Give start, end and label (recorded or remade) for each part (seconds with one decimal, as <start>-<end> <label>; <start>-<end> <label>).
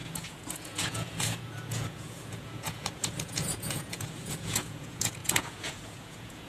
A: 0.0-6.5 remade